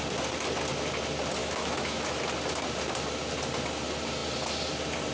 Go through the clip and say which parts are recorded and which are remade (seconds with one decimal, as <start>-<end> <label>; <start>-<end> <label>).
0.0-1.4 recorded; 1.4-2.2 remade; 2.2-5.1 recorded